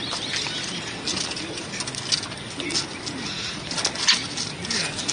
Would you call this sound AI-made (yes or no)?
no